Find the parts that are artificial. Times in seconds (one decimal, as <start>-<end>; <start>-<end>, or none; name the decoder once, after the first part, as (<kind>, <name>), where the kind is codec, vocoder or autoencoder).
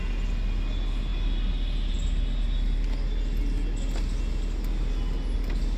none